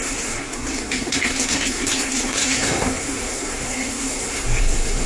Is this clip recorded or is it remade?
remade